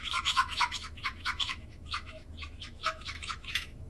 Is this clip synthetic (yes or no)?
yes